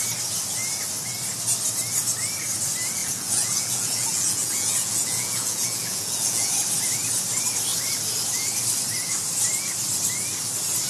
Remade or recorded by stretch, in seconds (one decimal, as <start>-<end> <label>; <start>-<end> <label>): 0.0-3.0 recorded; 3.0-6.5 remade; 6.5-10.9 recorded